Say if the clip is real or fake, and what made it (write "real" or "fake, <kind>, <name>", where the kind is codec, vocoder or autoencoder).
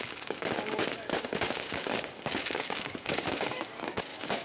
fake, codec, DAC